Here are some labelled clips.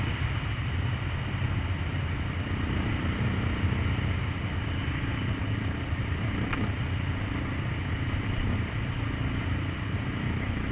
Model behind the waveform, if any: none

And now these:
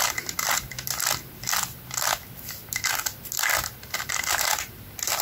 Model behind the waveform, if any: none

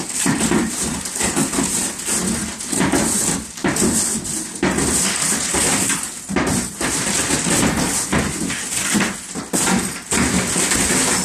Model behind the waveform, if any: none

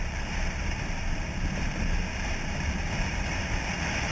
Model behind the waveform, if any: vocoder, BigVGAN v2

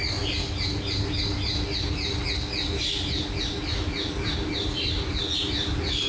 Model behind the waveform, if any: none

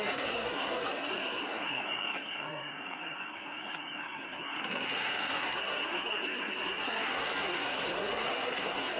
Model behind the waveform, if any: codec, SNAC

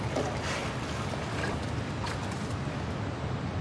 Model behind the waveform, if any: none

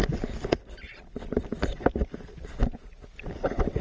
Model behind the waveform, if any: none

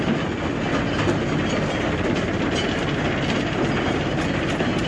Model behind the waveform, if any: none